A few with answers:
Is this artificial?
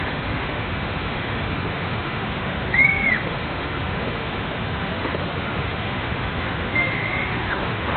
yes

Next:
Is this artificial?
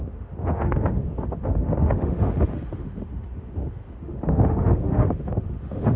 yes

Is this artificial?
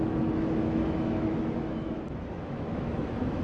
yes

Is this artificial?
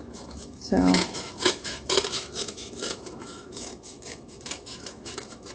yes